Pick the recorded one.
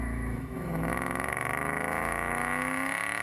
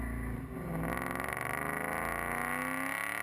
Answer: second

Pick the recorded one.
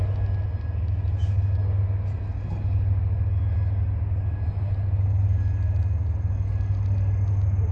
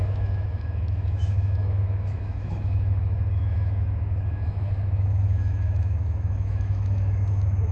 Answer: first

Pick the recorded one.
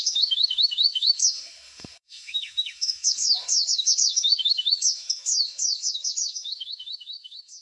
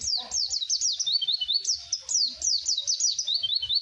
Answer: second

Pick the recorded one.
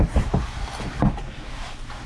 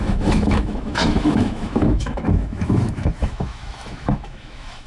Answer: first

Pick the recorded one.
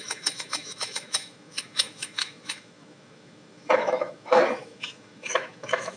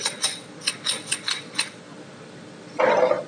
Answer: second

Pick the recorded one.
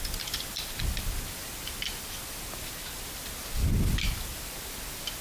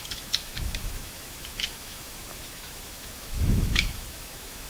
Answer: first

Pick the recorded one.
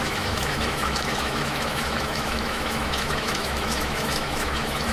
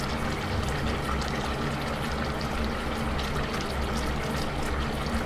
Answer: second